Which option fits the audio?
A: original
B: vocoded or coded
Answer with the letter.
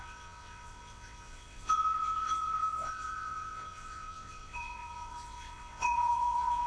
B